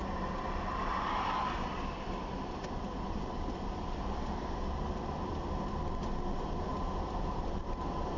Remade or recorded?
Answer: remade